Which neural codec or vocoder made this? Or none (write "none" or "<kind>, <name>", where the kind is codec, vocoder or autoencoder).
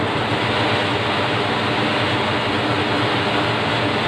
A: none